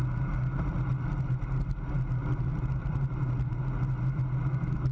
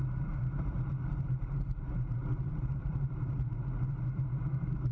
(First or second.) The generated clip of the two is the second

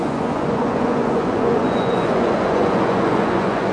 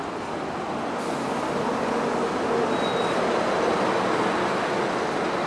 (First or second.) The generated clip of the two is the first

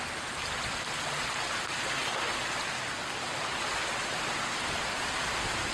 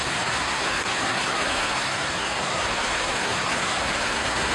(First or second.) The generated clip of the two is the second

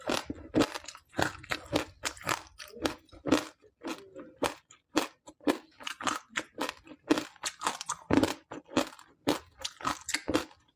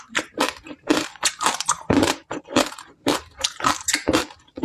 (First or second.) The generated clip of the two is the second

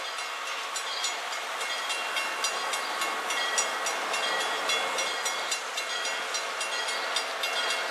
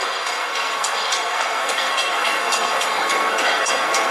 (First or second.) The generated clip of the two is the second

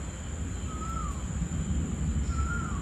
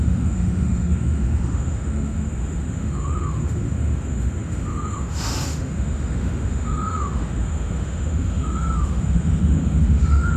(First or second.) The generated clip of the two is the second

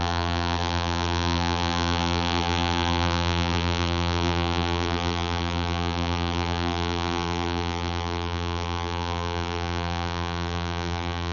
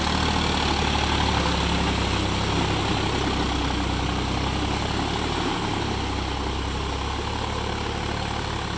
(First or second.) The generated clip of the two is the first